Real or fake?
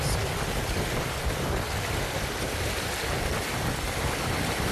real